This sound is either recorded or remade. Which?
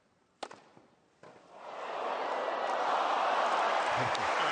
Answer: recorded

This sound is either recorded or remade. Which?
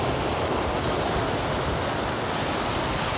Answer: recorded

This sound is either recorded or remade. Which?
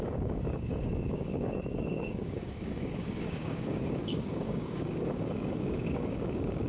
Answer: remade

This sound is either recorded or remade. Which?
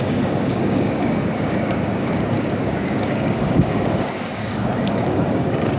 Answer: remade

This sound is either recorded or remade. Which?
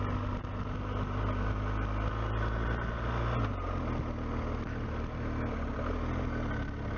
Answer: recorded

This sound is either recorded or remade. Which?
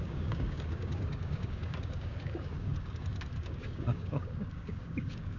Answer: remade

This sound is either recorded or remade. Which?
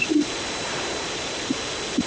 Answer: recorded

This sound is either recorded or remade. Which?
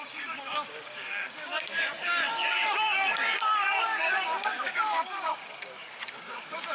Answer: remade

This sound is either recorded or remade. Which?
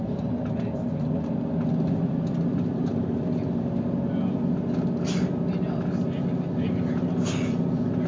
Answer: recorded